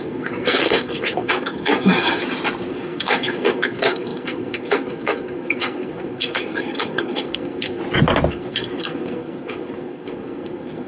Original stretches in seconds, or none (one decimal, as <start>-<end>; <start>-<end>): 2.2-2.7; 7.8-8.3